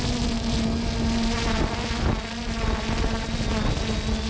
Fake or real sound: real